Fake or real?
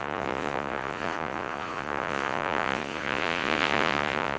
fake